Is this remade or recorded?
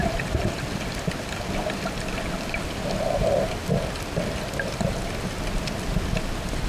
recorded